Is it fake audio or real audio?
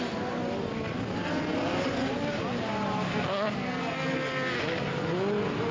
real